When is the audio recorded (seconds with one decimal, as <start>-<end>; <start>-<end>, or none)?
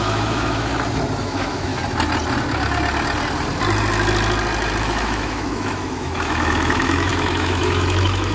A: 0.7-1.2; 1.7-4.8